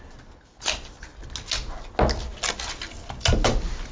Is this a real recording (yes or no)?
yes